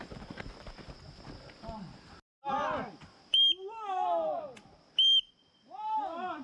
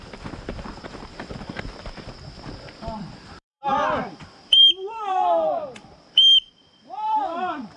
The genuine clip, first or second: first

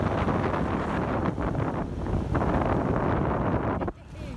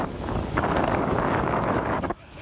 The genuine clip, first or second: first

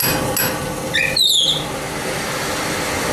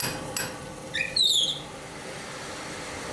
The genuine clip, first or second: first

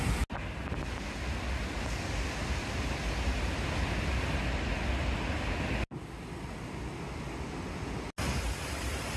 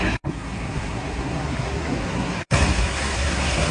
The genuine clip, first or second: first